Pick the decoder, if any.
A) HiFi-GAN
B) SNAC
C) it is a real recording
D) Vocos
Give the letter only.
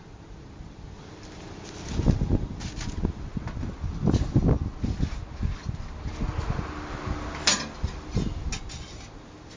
C